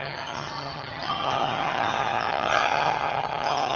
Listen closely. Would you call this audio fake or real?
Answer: fake